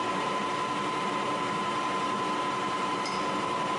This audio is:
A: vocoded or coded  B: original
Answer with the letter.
A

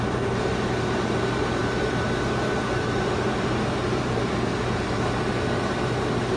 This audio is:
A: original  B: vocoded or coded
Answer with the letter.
B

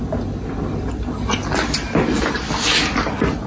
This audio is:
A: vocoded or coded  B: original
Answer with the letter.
B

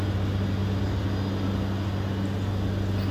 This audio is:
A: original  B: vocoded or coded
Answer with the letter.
A